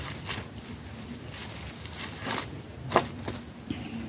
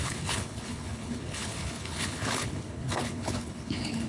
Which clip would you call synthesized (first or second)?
second